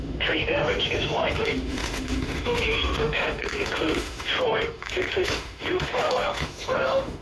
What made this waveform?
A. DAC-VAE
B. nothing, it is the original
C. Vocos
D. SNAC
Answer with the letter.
A